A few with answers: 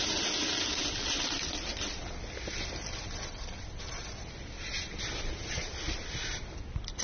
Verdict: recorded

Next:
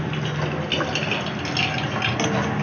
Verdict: recorded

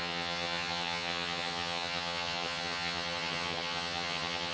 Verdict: remade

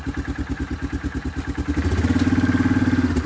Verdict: recorded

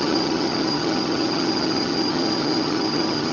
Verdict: remade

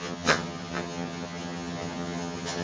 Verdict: remade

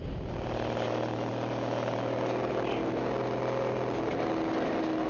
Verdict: recorded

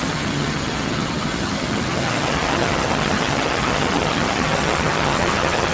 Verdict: remade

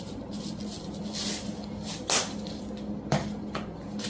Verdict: recorded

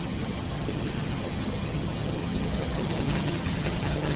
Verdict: remade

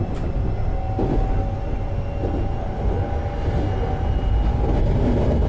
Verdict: recorded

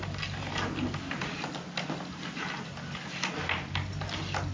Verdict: recorded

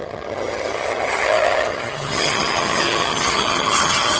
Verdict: remade